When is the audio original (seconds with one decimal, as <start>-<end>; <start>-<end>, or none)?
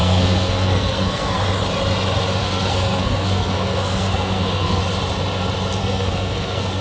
1.4-2.4; 4.8-5.8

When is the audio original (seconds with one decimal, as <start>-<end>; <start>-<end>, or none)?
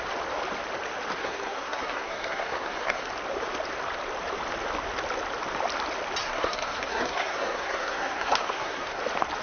0.0-1.2; 3.1-6.2; 9.0-9.4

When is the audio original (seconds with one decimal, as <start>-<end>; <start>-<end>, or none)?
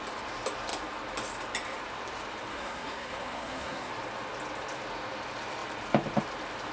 0.0-2.5; 3.9-6.7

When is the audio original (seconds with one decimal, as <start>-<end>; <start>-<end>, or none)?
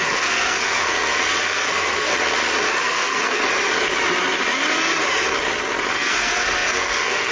0.9-1.4; 2.1-2.8; 3.4-5.9